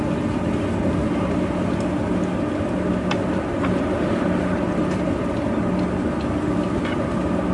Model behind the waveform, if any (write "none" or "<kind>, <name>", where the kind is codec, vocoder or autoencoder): none